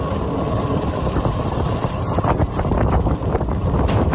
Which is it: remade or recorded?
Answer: recorded